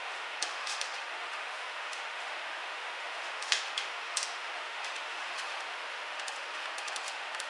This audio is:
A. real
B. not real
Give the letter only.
B